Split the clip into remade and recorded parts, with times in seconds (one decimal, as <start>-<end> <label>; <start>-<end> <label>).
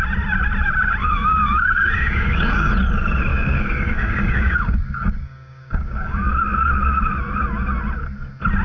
0.0-1.0 recorded; 1.0-2.7 remade; 2.7-3.3 recorded; 3.3-6.3 remade; 6.3-8.6 recorded